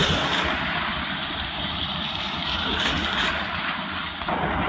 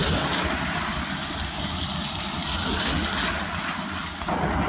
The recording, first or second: second